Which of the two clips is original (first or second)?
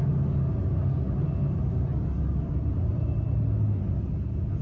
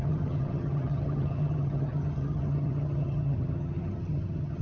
first